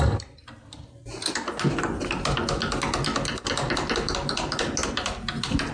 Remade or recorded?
recorded